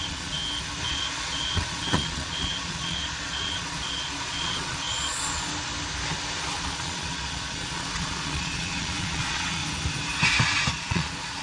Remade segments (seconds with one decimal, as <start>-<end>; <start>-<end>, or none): 0.0-0.4; 0.9-5.5; 6.4-9.6; 10.7-11.4